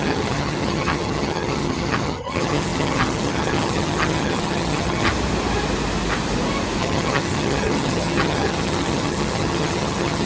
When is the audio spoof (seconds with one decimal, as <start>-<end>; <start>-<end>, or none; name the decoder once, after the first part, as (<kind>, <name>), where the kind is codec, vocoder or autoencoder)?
0.0-5.1 (vocoder, HiFi-GAN); 6.8-10.3